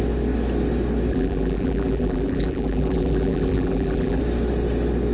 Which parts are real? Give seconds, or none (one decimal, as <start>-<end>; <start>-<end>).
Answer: 0.0-1.1; 4.2-5.1